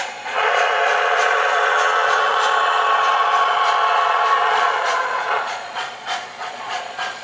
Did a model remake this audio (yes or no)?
yes